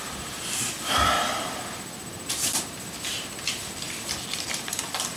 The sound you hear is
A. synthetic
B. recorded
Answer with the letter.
B